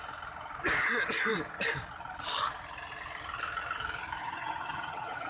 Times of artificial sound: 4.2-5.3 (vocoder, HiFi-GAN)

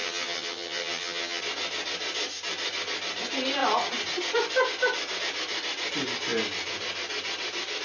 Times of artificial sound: 0.0-1.4 (vocoder, HiFi-GAN)

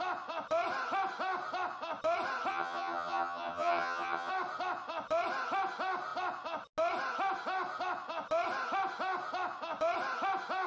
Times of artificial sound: 2.5-4.3 (vocoder, HiFi-GAN)